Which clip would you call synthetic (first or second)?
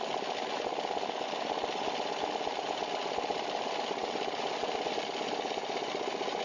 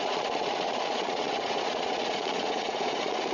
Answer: second